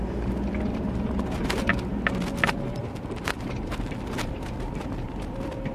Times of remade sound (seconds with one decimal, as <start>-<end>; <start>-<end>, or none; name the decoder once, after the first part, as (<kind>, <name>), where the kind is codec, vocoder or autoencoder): 0.0-1.7 (vocoder, BigVGAN v2); 2.8-3.7; 4.2-5.7